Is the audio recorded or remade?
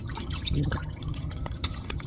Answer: remade